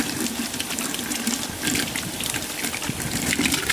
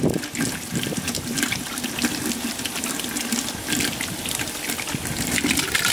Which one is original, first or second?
second